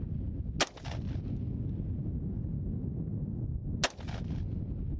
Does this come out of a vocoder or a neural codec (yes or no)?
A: no